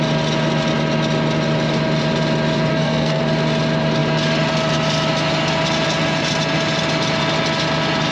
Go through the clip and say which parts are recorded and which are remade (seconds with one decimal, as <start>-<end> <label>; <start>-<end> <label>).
0.0-2.7 recorded; 2.7-3.2 remade; 3.2-8.1 recorded